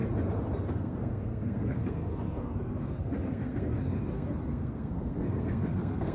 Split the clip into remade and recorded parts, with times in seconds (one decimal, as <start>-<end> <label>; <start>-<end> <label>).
0.0-0.7 recorded; 0.7-6.1 remade